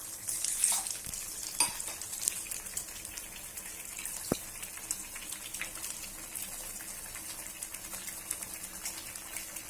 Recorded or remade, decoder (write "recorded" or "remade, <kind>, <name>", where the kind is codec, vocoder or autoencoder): recorded